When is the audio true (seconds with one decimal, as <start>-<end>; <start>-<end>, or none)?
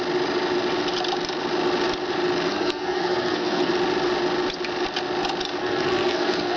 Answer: 0.0-2.5; 3.7-5.6